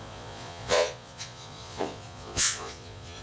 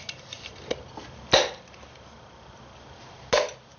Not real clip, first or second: first